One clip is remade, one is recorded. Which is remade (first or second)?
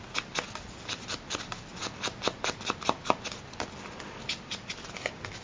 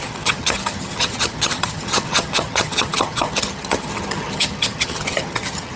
second